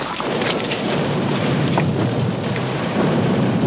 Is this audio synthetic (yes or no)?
yes